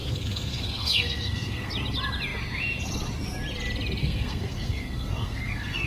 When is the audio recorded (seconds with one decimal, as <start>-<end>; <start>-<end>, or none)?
1.7-4.0